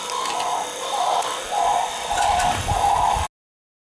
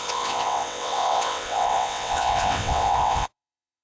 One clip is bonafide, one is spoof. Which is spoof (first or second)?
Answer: second